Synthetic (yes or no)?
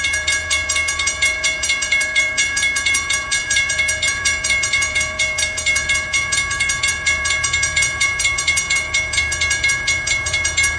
yes